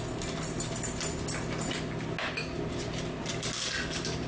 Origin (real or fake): real